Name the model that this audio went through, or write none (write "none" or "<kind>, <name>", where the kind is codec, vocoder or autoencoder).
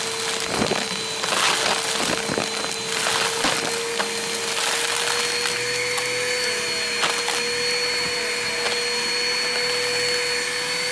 none